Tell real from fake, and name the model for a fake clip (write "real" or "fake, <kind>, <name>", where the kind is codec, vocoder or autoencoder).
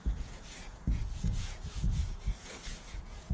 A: fake, vocoder, Vocos